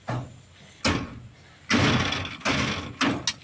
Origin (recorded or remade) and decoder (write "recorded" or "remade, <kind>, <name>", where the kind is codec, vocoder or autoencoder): recorded